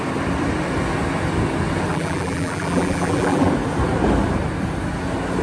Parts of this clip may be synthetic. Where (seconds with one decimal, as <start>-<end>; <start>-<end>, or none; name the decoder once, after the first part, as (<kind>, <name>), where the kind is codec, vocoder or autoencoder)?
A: 1.9-3.5 (vocoder, BigVGAN v2)

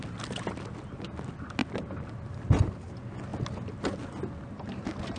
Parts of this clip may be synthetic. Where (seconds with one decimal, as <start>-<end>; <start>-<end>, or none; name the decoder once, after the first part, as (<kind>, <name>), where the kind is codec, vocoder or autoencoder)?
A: none